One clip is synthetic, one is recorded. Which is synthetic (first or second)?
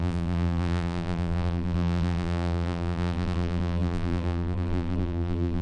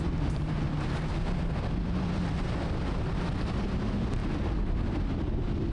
first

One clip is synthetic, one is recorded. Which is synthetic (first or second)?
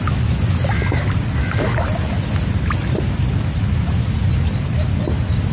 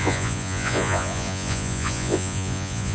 second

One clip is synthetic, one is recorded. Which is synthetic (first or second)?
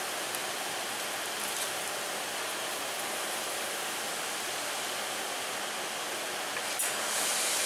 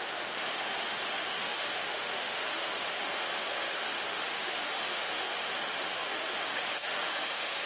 second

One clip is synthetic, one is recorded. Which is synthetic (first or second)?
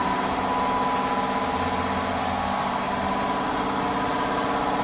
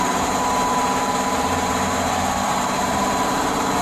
second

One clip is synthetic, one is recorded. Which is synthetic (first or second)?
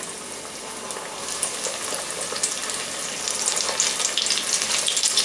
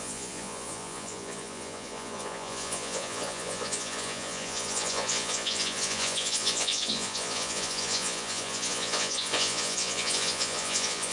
second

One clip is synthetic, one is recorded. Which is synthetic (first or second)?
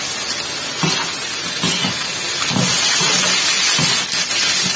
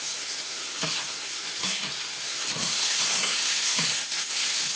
second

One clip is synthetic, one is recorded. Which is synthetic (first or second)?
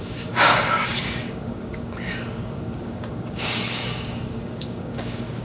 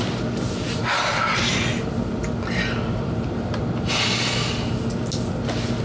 first